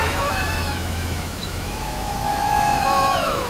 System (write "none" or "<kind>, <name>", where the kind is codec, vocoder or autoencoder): autoencoder, DAC-VAE